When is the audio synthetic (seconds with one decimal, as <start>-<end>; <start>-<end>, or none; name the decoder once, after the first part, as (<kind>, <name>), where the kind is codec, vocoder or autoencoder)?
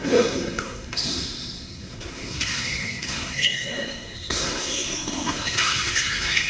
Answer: 0.0-6.5 (codec, SNAC)